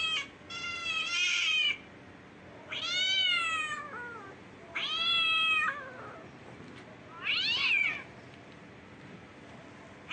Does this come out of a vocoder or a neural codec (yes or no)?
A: no